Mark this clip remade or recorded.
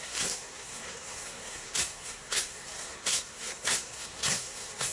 remade